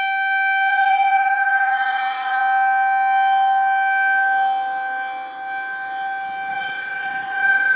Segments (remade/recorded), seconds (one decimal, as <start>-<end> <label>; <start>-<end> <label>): 0.0-0.7 recorded; 0.7-2.4 remade; 2.4-6.5 recorded; 6.5-7.8 remade